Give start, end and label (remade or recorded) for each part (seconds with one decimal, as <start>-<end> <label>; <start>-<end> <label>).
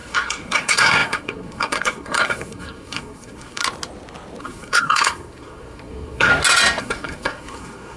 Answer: 0.0-3.6 remade; 3.6-4.4 recorded; 4.4-6.3 remade; 6.3-6.8 recorded; 6.8-8.0 remade